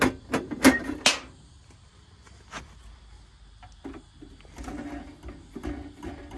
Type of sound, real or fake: real